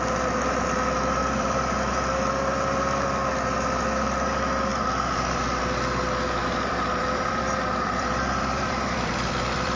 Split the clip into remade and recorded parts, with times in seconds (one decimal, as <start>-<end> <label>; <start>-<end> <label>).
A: 0.0-1.2 recorded; 1.2-1.9 remade; 1.9-4.7 recorded; 4.7-5.6 remade; 5.6-6.4 recorded; 6.4-9.8 remade